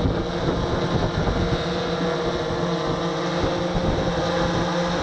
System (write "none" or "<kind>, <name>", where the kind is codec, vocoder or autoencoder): none